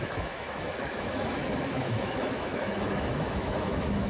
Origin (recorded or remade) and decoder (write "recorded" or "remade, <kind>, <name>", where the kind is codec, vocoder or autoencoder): remade, autoencoder, DAC-VAE